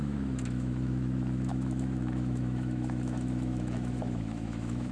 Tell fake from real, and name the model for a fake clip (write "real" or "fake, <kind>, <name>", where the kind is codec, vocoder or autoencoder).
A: fake, autoencoder, DAC-VAE